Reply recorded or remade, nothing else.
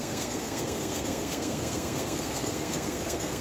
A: remade